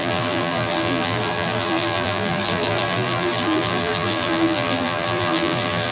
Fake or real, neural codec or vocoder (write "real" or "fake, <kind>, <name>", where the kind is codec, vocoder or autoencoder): fake, vocoder, BigVGAN v2